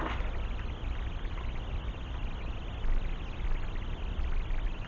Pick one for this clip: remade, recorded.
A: recorded